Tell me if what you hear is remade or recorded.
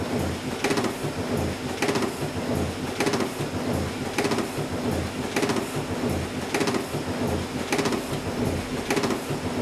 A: recorded